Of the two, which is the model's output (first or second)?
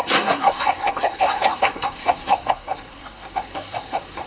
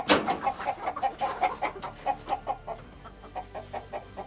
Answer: first